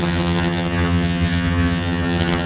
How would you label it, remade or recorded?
remade